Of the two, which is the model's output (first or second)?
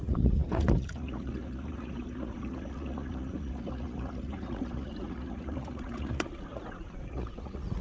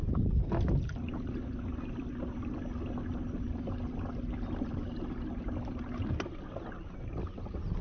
first